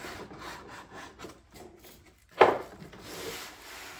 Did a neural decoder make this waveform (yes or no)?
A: no